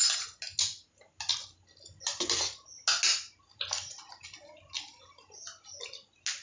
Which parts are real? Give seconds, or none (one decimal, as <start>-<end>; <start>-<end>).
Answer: 0.0-6.4

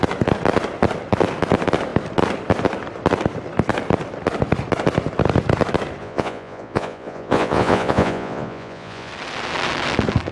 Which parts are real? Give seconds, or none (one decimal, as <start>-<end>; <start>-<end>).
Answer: 0.0-6.0; 9.1-10.3

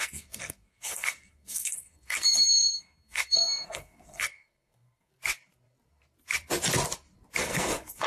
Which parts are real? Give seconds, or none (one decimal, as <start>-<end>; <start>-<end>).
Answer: 5.1-7.4

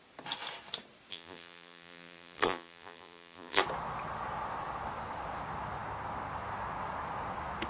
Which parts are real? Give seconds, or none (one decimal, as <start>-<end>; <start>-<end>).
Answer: 0.0-1.1; 3.6-7.7

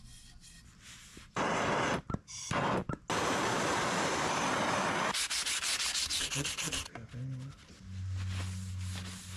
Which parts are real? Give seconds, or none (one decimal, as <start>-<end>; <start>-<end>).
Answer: 0.0-3.7; 4.6-9.4

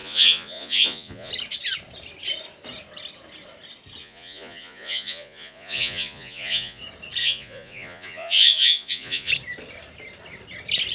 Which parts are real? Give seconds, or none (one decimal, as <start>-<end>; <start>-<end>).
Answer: 1.3-4.0; 6.8-7.2; 9.3-10.9

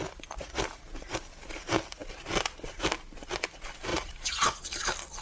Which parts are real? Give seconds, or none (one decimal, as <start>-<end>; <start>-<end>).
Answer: 0.6-3.9; 4.6-5.2